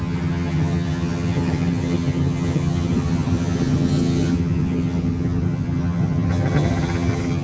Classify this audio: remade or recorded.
remade